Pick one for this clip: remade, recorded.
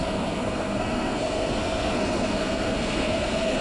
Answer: remade